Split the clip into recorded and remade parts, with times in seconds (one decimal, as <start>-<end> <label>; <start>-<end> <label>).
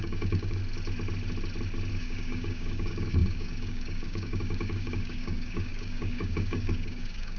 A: 0.0-0.6 remade; 0.6-1.9 recorded; 1.9-7.4 remade